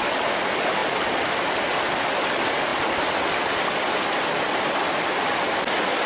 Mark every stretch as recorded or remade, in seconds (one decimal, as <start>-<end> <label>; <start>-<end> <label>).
0.0-6.1 recorded

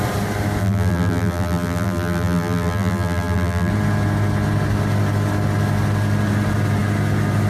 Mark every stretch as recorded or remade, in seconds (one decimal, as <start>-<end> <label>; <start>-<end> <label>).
0.0-0.6 recorded; 0.6-3.7 remade; 3.7-7.5 recorded

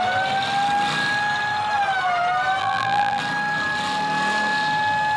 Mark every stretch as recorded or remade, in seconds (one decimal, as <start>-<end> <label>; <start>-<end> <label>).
0.0-2.6 recorded; 2.6-3.2 remade; 3.2-5.2 recorded

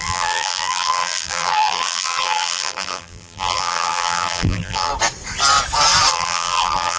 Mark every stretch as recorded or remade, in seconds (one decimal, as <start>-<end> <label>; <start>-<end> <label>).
0.0-4.9 remade; 4.9-6.1 recorded; 6.1-7.0 remade